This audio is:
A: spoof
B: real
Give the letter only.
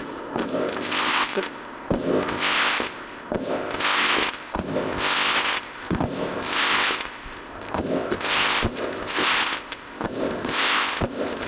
A